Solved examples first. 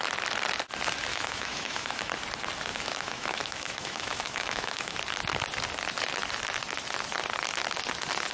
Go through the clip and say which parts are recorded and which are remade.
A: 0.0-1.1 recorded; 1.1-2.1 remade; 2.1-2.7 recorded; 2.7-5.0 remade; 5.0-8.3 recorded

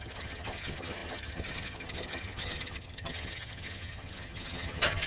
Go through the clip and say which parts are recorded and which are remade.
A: 0.0-5.1 remade